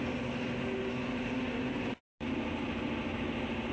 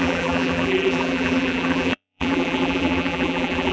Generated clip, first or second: second